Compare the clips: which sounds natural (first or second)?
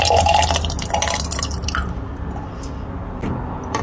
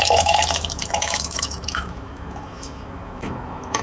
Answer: first